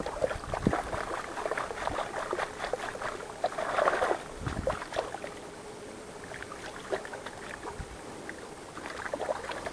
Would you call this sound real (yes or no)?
yes